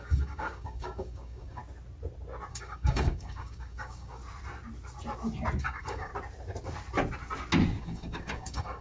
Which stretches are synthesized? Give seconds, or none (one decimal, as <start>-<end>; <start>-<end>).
0.0-1.6; 2.5-4.2; 5.6-6.1; 7.8-8.8